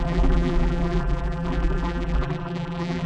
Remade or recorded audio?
remade